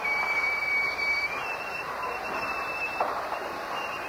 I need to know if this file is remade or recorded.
remade